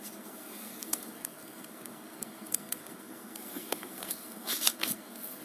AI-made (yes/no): yes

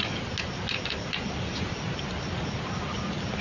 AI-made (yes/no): no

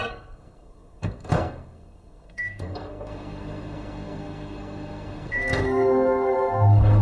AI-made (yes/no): yes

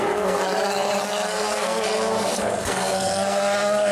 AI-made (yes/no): yes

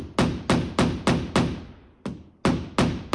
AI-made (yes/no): no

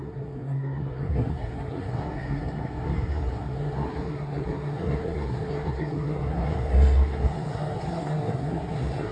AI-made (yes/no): yes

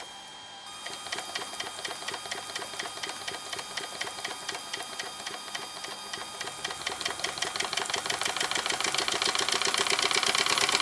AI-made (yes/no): no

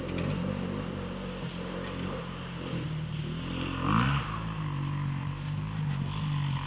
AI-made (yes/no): no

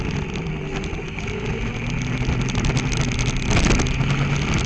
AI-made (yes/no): no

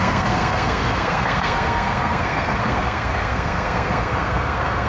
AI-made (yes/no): yes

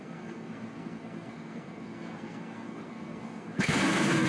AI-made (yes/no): yes